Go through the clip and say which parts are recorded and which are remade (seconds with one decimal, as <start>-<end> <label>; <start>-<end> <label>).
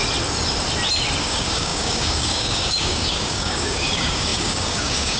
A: 0.0-1.2 recorded; 1.2-5.2 remade